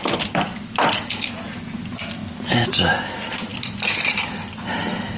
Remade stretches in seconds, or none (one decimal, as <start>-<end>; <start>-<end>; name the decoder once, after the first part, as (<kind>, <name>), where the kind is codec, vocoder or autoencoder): none